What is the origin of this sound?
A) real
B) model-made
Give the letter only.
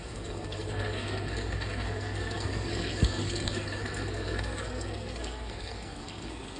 B